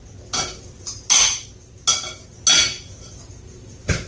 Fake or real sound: real